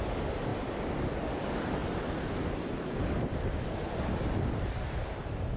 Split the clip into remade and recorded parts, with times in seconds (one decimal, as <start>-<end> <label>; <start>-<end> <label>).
0.0-5.6 recorded